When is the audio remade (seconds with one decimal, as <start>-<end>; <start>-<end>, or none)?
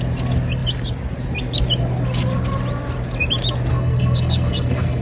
3.7-5.0